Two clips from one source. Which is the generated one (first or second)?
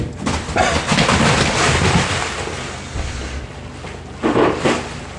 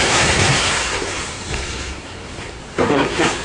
second